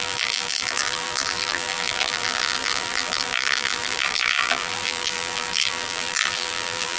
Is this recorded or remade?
remade